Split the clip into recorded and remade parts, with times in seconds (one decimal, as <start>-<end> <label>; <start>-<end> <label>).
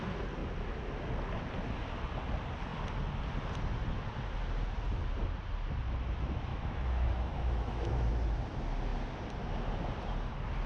0.0-6.5 recorded; 6.5-8.1 remade; 8.1-10.7 recorded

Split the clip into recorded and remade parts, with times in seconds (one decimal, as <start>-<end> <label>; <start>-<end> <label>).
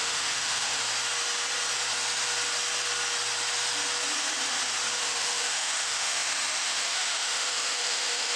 0.0-0.8 remade; 0.8-5.0 recorded; 5.0-8.4 remade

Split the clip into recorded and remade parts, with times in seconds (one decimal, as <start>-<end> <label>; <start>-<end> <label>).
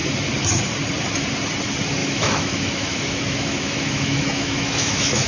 0.0-2.0 recorded; 2.0-5.3 remade